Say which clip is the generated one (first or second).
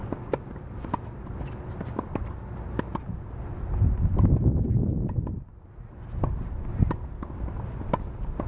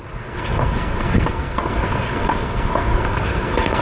second